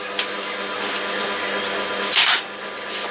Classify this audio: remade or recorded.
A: recorded